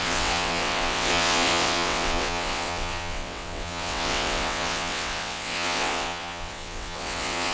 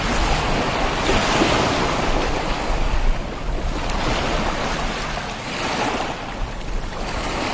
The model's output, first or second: first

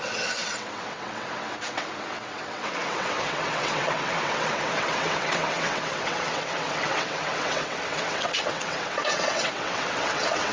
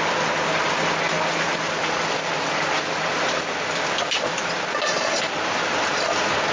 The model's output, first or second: first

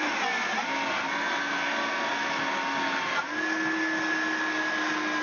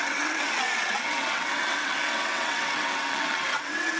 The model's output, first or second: second